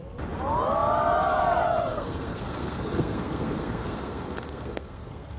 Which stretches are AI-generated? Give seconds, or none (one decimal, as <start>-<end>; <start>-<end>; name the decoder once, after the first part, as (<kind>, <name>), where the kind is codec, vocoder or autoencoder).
1.9-5.4 (codec, SNAC)